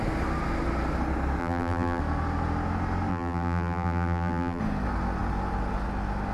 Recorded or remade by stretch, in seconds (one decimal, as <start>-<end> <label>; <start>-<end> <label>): 0.0-1.4 recorded; 1.4-2.0 remade; 2.0-3.1 recorded; 3.1-4.6 remade; 4.6-6.3 recorded